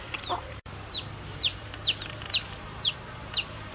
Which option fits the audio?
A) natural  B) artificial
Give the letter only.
B